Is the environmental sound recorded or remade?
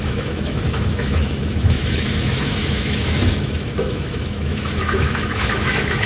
remade